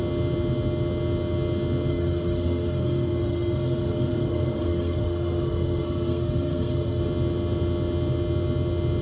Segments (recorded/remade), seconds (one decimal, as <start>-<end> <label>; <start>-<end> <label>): 0.0-1.9 recorded; 1.9-7.0 remade; 7.0-9.0 recorded